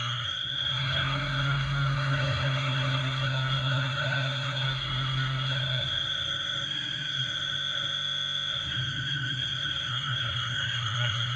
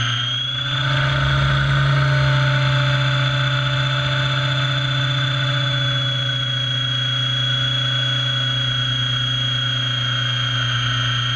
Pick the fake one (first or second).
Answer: first